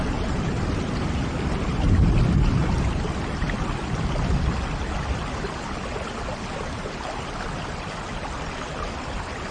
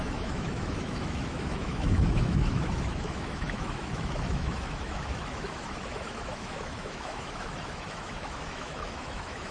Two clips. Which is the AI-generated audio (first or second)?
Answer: second